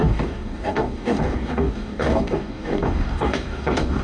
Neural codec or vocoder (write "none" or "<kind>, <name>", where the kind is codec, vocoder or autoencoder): codec, DAC